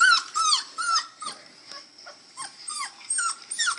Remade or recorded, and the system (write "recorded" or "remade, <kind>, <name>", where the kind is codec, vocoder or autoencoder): recorded